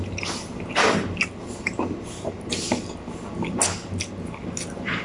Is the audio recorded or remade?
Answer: recorded